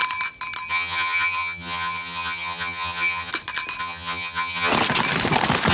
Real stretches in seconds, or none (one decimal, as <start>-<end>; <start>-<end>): 0.0-0.7; 3.3-3.8; 4.7-5.7